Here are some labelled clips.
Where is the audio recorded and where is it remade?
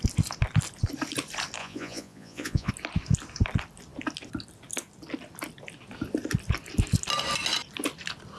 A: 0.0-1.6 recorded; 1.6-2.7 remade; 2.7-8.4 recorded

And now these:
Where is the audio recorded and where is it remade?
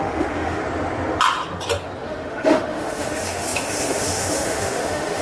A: 0.0-0.6 remade; 0.6-2.0 recorded; 2.0-5.2 remade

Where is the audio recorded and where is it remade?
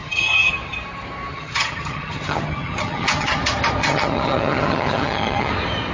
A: 0.0-0.5 remade; 0.5-1.3 recorded; 1.3-3.4 remade; 3.4-3.8 recorded; 3.8-5.5 remade; 5.5-5.9 recorded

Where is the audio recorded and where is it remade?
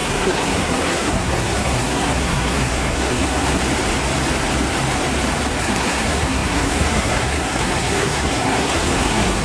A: 0.0-3.6 remade; 3.6-5.6 recorded; 5.6-9.4 remade